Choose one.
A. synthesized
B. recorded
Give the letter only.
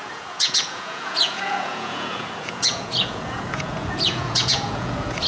A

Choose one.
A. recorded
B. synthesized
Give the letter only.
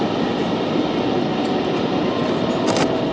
A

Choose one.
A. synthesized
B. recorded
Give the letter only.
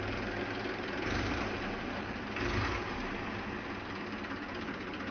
B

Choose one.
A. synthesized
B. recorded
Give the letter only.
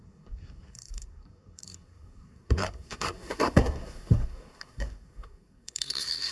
A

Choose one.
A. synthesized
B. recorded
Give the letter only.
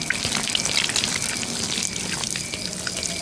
B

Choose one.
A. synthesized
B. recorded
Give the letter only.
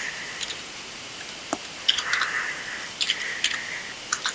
B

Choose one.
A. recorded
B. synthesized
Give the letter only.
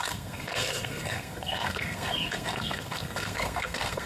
B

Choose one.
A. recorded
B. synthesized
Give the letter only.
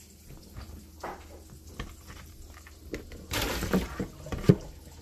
A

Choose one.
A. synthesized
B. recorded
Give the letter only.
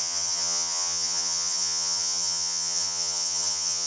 A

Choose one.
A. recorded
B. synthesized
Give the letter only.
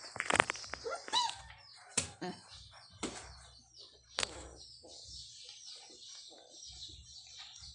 A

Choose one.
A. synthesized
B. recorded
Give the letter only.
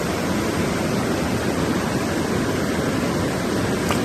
B